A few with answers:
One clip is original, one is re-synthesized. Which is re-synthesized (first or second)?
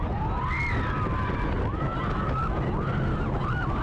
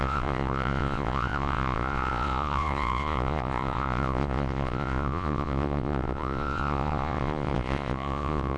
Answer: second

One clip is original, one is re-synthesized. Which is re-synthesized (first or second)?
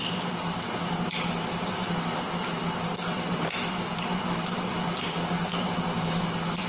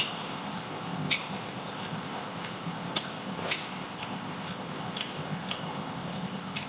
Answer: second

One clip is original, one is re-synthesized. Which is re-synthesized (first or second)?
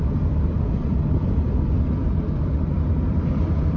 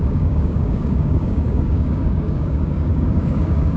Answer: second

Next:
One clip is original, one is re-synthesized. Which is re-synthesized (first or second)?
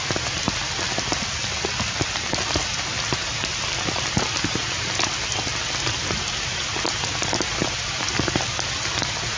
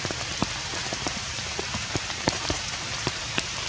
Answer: second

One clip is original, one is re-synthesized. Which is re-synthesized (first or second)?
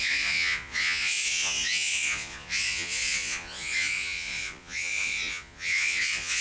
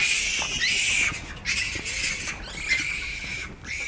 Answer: first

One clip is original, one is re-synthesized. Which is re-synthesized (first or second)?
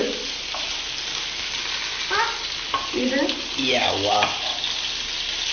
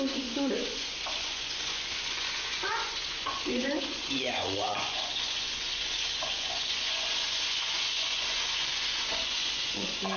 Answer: second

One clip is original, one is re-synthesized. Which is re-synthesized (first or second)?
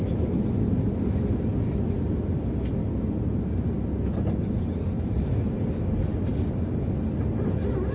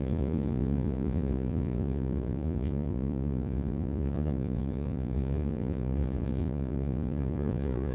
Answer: second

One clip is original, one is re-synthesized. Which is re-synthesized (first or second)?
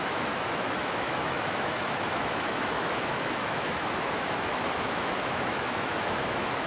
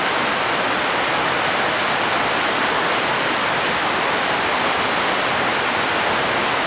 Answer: first